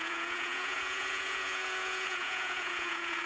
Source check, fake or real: fake